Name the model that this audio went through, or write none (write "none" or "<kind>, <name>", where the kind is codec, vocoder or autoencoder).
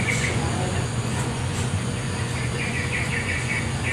vocoder, Vocos